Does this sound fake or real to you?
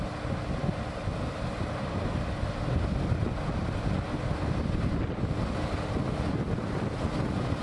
real